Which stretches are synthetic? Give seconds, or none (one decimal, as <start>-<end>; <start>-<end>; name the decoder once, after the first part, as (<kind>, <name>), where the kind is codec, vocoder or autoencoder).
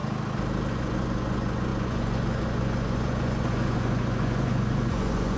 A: 0.7-5.4 (vocoder, Vocos)